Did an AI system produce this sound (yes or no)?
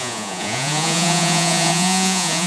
yes